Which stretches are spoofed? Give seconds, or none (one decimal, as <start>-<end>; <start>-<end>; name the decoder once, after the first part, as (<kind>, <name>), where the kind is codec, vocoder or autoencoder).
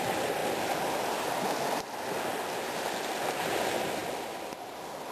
none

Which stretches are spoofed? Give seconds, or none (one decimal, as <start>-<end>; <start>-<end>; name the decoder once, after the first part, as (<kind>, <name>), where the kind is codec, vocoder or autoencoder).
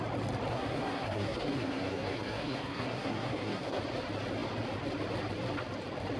0.5-3.8 (codec, SNAC)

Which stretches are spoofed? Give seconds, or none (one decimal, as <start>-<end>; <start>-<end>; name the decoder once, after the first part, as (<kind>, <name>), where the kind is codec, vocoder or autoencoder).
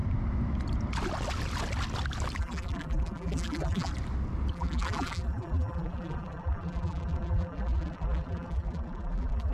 2.4-3.9 (vocoder, BigVGAN v2); 4.5-9.5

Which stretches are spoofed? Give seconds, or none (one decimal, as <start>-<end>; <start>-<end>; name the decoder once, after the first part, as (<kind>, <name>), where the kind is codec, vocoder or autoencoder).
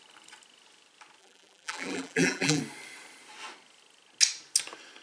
1.2-2.6 (vocoder, BigVGAN v2)